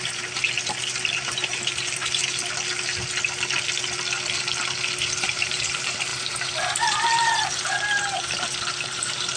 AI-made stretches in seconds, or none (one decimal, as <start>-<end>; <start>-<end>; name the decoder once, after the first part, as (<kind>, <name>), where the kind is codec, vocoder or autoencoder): 0.0-2.2 (vocoder, BigVGAN v2); 5.0-9.4